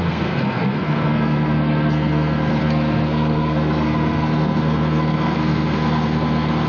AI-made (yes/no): yes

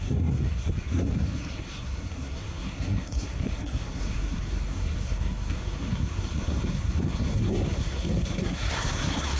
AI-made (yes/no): yes